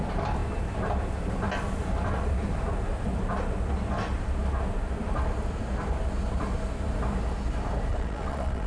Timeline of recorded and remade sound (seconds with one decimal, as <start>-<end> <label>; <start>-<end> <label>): 0.0-7.9 recorded; 7.9-8.7 remade